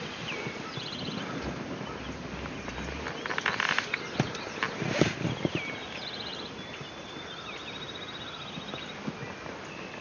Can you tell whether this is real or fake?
real